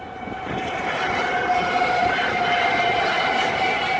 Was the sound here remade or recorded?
recorded